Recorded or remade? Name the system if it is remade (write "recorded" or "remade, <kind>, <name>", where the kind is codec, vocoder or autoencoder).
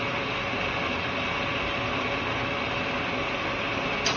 recorded